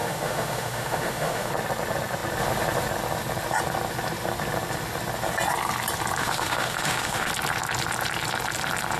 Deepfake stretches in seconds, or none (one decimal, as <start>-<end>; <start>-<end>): 0.0-1.5; 6.2-7.3